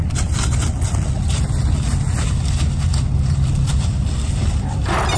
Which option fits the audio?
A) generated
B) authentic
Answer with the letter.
B